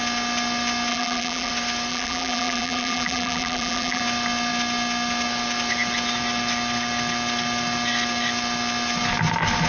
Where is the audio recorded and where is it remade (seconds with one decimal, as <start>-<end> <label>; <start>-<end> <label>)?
0.0-0.9 recorded; 0.9-1.5 remade; 1.5-1.9 recorded; 1.9-4.0 remade; 4.0-9.7 recorded